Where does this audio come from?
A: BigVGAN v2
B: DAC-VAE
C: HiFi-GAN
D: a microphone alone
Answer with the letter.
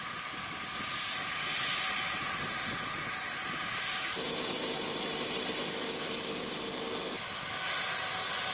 D